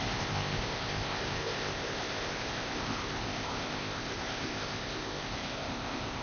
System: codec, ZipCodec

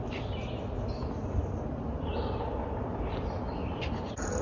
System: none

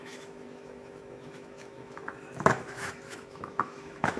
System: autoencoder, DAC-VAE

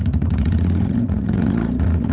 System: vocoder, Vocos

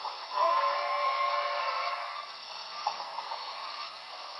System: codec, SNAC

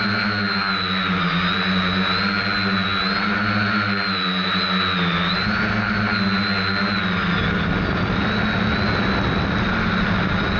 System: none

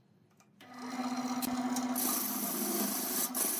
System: none